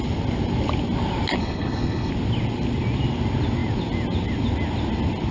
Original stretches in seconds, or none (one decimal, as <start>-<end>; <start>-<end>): 0.0-1.4; 2.1-5.3